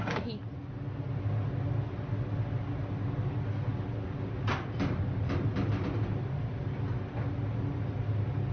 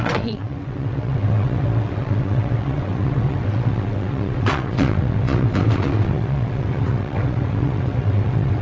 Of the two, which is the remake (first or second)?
second